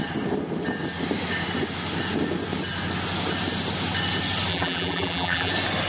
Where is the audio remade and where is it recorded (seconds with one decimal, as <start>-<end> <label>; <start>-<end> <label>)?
0.0-4.5 recorded; 4.5-5.5 remade; 5.5-5.9 recorded